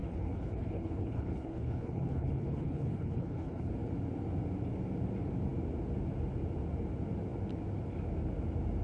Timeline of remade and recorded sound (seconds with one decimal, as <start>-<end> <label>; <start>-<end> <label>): 0.0-3.7 remade; 3.7-8.8 recorded